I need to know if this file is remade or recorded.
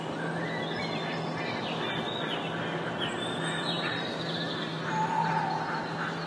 recorded